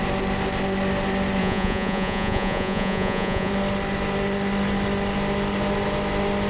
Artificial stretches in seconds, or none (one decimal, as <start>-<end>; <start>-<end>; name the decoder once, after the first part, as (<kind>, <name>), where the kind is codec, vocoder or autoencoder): 1.4-3.5 (vocoder, Vocos)